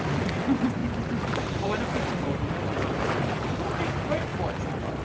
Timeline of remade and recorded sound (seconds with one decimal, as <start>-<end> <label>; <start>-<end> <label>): 0.0-5.0 recorded